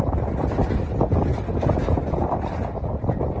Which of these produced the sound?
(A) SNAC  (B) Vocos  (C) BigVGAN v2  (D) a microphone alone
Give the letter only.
D